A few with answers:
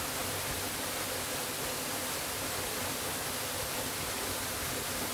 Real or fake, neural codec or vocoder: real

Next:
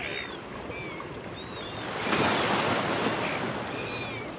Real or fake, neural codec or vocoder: real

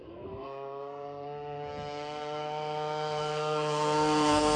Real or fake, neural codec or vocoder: fake, codec, SNAC